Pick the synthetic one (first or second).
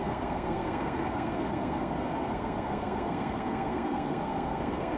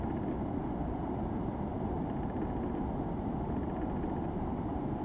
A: first